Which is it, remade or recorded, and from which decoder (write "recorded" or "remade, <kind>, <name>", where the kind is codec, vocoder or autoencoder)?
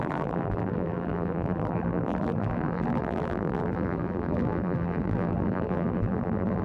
remade, vocoder, BigVGAN v2